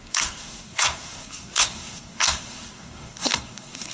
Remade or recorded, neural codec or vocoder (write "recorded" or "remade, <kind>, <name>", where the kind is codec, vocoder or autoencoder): remade, codec, SNAC